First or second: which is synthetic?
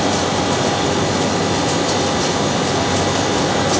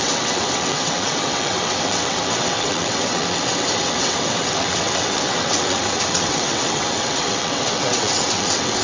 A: second